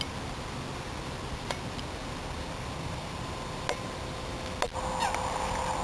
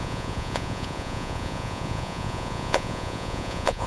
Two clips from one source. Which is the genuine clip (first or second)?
first